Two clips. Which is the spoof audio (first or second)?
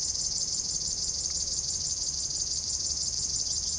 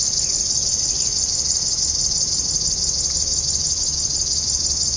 first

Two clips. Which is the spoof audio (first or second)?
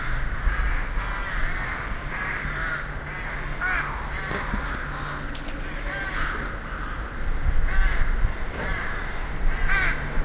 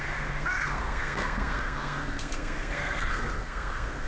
second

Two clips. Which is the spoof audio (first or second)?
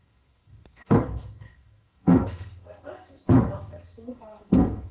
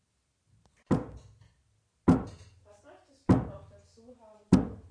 first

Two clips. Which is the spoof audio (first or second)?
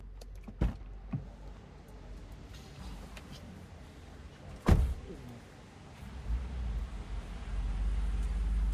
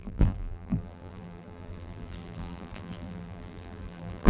second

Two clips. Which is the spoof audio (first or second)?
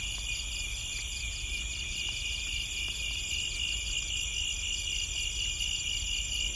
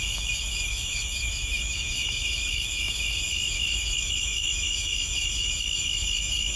second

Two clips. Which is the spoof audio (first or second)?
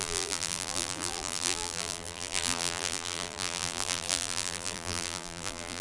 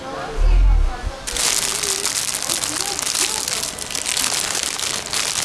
first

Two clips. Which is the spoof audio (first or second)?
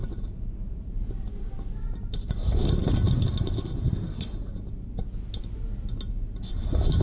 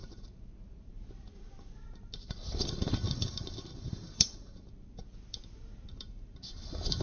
second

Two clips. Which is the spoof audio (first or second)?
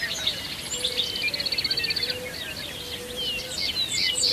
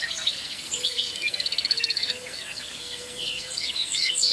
second